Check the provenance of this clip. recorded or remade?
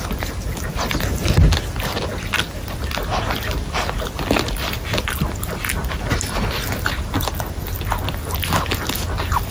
recorded